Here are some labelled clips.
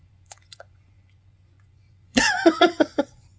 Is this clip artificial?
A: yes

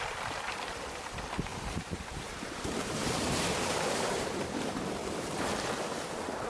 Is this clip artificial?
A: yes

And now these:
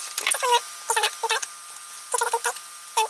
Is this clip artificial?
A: no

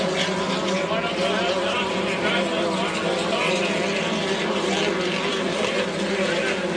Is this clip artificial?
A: no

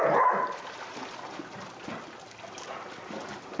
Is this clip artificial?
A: no